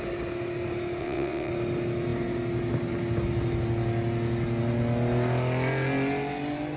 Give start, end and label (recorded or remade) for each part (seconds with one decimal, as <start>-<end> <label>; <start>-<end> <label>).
0.0-1.0 recorded; 1.0-1.5 remade; 1.5-6.8 recorded